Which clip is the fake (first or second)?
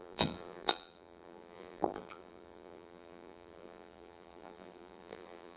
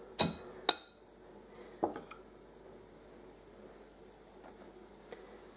first